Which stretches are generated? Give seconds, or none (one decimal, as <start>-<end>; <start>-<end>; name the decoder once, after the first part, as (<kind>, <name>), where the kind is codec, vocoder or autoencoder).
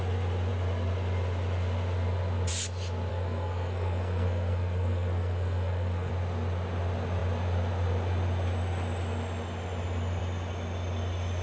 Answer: 3.1-6.1 (codec, SNAC)